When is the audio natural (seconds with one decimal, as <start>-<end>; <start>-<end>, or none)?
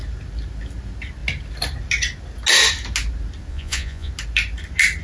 0.0-3.5; 4.1-5.0